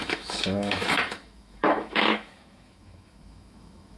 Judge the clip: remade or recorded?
remade